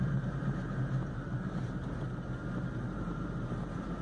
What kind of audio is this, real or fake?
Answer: fake